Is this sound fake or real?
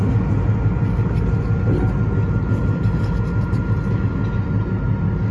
real